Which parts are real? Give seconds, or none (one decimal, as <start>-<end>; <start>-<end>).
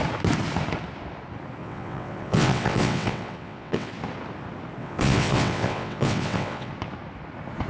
0.0-1.6; 3.9-4.8; 6.7-7.7